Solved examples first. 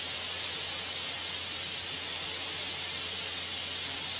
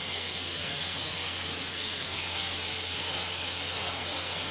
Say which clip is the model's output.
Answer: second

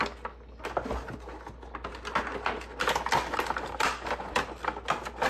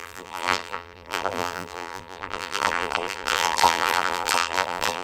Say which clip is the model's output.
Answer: second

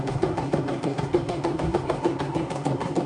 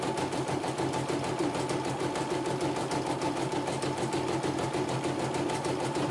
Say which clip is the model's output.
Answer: first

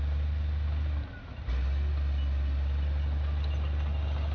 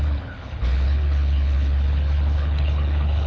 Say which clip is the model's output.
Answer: second